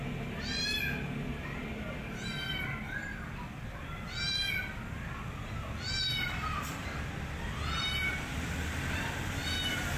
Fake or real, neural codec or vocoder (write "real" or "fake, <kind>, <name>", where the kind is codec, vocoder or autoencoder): real